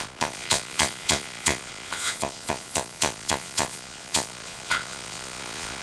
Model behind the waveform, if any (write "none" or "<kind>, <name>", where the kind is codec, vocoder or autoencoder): vocoder, Vocos